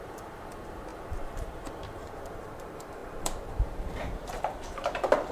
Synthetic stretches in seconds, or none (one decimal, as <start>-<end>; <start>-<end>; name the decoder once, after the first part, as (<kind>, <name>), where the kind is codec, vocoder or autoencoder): 0.0-5.3 (vocoder, BigVGAN v2)